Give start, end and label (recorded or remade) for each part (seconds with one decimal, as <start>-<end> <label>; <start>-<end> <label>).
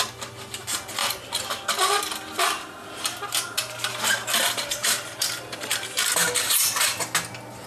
0.0-1.0 recorded; 1.0-1.6 remade; 1.6-2.4 recorded; 2.4-7.0 remade; 7.0-7.7 recorded